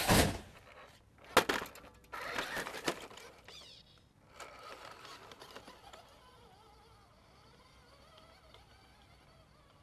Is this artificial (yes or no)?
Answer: no